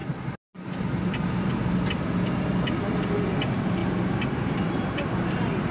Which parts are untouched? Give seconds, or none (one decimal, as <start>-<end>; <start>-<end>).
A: 0.0-3.8; 5.3-5.7